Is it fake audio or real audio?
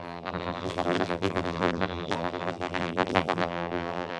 fake